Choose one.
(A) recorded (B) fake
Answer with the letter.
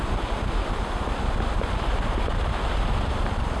A